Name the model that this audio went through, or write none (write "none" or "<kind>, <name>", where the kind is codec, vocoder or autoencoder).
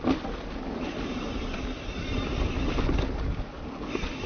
none